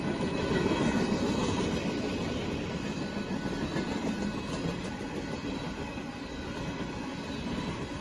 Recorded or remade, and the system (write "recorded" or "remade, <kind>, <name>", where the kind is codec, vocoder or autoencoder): recorded